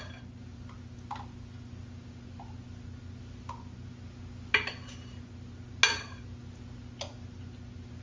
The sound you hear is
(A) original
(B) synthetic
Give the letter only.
A